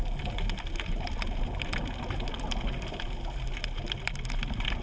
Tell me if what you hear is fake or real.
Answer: real